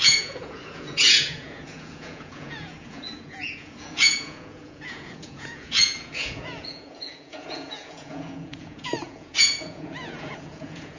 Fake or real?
fake